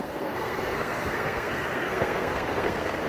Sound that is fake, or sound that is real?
fake